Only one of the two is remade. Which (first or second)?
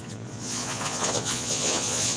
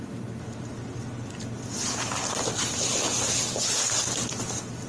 first